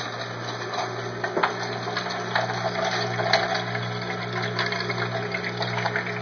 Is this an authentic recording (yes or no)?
yes